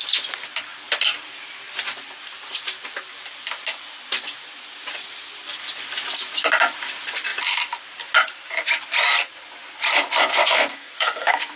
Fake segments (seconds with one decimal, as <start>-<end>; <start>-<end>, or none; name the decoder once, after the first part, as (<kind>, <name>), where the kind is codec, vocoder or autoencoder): 10.3-11.6 (codec, SNAC)